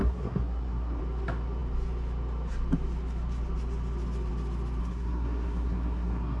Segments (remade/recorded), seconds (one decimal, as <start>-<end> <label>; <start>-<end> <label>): 0.0-1.0 remade; 1.0-4.8 recorded; 4.8-6.4 remade